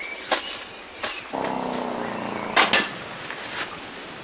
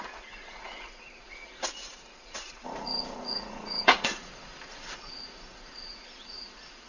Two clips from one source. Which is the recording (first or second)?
first